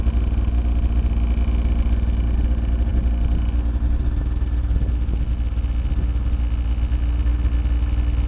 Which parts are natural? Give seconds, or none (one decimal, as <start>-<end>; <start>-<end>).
0.0-8.3